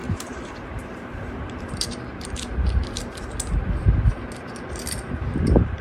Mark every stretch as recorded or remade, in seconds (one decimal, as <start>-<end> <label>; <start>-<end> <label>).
0.0-2.5 remade; 2.5-5.3 recorded; 5.3-5.8 remade